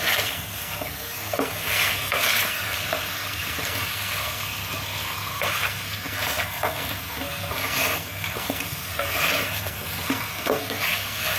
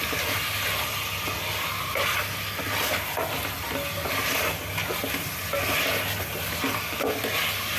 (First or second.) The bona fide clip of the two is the second